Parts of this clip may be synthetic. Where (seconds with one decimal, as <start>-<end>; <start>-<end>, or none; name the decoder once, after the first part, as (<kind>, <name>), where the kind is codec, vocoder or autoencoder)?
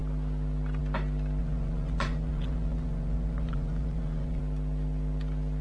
1.4-4.4 (vocoder, Vocos)